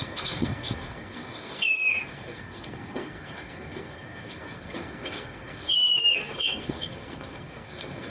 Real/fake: fake